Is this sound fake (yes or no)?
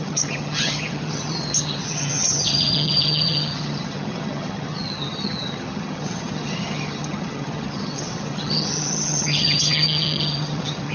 yes